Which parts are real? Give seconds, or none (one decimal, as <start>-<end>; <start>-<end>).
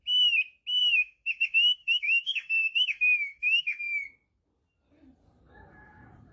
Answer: 0.0-0.8; 3.8-6.3